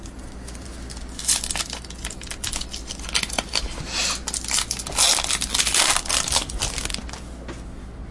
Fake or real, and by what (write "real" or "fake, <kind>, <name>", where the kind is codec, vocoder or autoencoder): real